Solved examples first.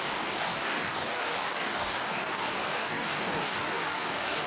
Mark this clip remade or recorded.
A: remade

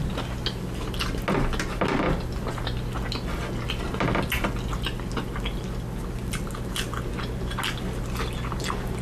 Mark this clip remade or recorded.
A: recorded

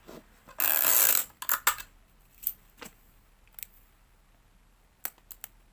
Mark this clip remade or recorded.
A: recorded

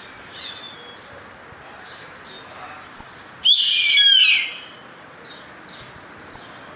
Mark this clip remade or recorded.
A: recorded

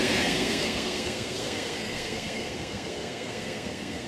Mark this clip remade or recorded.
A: remade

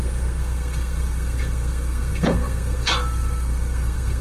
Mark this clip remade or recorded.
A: remade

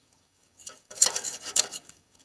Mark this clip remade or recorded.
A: remade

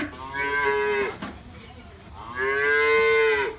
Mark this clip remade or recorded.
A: recorded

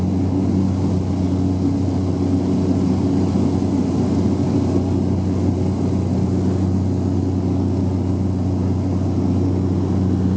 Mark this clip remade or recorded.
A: recorded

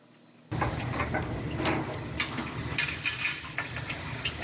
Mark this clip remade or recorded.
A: recorded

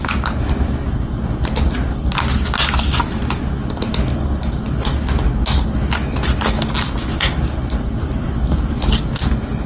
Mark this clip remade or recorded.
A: recorded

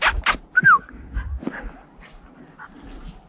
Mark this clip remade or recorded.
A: recorded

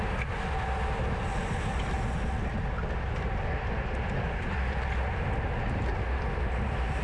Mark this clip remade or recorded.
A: recorded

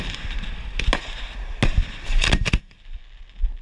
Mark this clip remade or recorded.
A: recorded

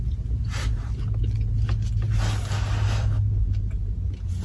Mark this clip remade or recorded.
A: recorded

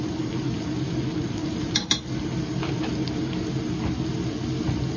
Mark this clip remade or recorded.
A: recorded